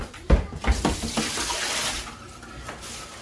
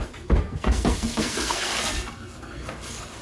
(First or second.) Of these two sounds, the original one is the first